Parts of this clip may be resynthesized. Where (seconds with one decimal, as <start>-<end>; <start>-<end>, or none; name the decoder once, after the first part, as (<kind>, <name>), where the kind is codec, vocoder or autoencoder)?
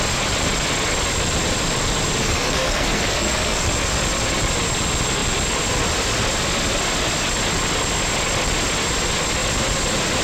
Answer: 2.2-3.7 (codec, SNAC)